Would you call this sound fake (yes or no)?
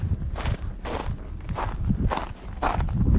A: no